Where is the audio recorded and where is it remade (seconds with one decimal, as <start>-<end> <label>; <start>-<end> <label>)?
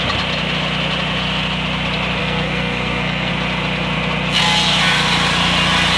0.0-2.2 recorded; 2.2-3.3 remade; 3.3-6.0 recorded